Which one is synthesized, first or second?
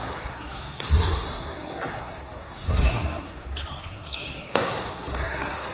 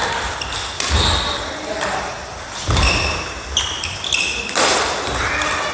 first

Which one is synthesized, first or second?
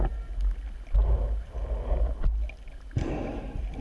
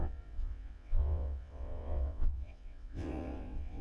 second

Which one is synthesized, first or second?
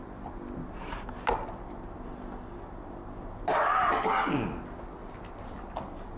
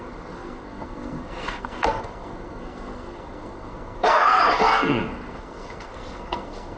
second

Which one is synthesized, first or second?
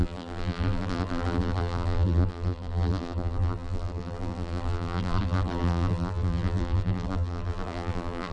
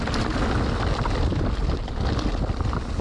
first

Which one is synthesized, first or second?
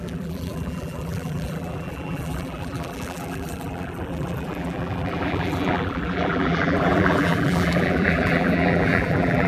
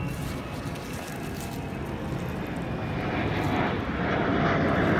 first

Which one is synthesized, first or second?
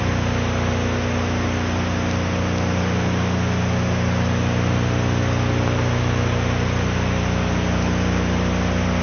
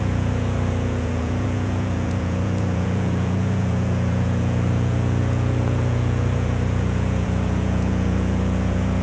second